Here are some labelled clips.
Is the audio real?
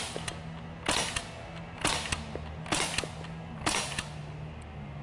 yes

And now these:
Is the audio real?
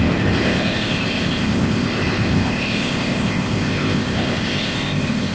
no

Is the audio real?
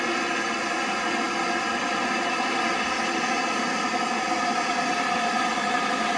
yes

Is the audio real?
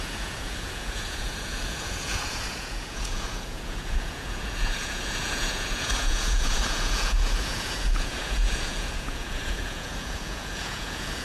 no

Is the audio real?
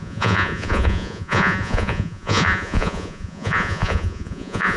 no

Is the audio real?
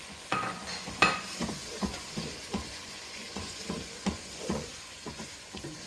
no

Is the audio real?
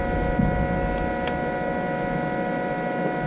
yes